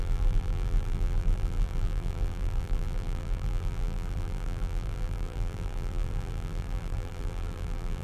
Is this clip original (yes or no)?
no